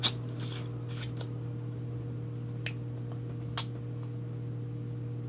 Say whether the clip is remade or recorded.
recorded